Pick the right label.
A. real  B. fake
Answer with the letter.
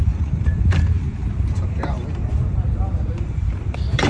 B